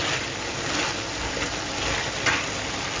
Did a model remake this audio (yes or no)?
no